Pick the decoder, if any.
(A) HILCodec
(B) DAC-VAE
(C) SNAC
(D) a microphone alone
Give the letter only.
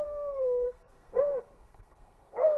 C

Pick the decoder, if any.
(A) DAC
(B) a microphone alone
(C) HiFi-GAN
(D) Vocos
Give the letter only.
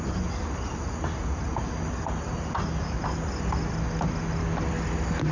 B